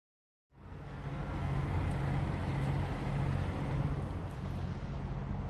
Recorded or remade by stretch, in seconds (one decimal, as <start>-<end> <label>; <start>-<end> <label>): 0.0-0.4 recorded; 0.4-1.7 remade; 1.7-5.5 recorded